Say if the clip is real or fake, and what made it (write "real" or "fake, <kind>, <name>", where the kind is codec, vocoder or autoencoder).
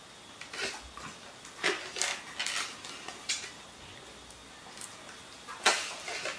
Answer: real